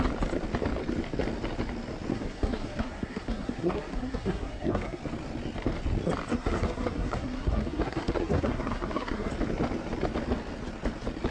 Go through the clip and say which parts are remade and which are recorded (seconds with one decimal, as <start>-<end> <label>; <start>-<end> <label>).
0.0-2.1 recorded; 2.1-5.0 remade; 5.0-6.3 recorded; 6.3-9.3 remade; 9.3-11.3 recorded